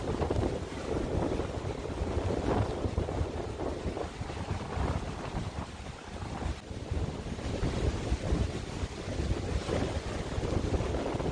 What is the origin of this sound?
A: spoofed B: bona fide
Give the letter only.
B